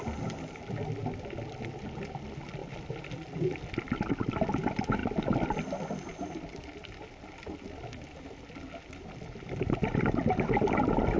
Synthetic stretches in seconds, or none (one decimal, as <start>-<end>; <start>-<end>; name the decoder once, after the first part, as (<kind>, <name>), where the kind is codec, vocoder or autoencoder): none